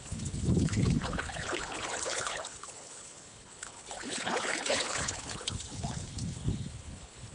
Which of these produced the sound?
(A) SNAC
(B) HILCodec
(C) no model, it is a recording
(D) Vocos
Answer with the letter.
B